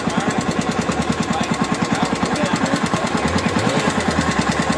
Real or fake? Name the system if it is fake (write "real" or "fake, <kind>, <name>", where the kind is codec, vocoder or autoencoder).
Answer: real